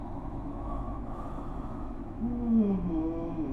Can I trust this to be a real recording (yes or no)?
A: no